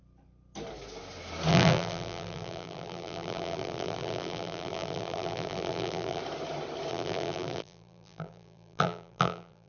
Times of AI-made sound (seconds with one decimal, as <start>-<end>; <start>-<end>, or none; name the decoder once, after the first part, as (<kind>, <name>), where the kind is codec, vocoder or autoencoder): 1.5-6.2 (vocoder, BigVGAN v2); 6.9-9.7